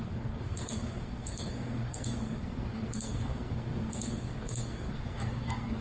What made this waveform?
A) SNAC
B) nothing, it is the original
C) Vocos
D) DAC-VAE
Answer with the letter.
A